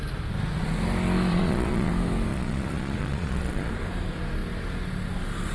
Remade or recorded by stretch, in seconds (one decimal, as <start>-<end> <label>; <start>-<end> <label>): 0.0-1.3 recorded; 1.3-1.9 remade; 1.9-2.3 recorded; 2.3-3.7 remade; 3.7-5.5 recorded